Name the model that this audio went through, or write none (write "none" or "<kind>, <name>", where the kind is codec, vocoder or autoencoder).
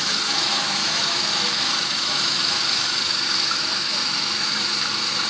autoencoder, DAC-VAE